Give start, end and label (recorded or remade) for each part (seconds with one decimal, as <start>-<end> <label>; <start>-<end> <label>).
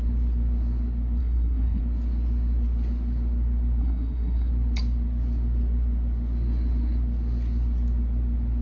0.0-1.2 recorded; 1.2-1.8 remade; 1.8-3.8 recorded; 3.8-4.5 remade; 4.5-8.6 recorded